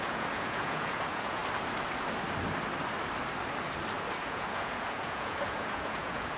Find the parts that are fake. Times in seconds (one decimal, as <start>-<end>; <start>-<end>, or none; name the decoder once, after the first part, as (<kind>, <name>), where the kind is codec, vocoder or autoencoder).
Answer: 0.0-1.4 (vocoder, Vocos); 4.1-6.4